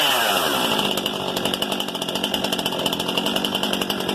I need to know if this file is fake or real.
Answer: real